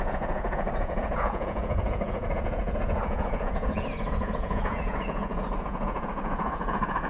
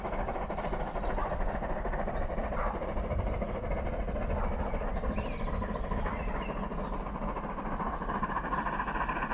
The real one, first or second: second